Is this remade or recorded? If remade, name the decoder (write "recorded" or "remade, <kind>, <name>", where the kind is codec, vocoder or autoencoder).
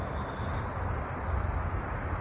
recorded